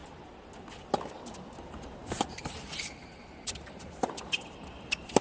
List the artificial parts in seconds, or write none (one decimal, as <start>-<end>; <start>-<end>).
1.1-5.2